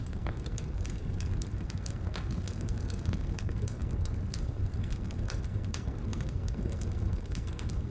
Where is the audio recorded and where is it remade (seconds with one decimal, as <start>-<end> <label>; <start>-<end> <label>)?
0.0-7.9 remade

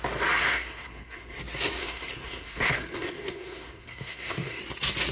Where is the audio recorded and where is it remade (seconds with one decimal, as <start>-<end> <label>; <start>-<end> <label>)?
0.0-0.4 recorded; 0.4-1.4 remade; 1.4-1.8 recorded; 1.8-4.6 remade; 4.6-5.1 recorded

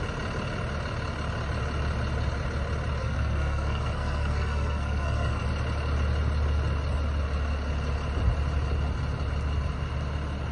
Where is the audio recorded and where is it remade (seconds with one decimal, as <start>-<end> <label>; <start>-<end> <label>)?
0.0-3.0 recorded; 3.0-5.4 remade; 5.4-10.5 recorded

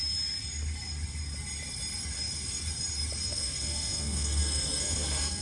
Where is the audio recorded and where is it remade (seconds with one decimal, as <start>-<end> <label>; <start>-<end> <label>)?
0.0-3.2 recorded; 3.2-5.4 remade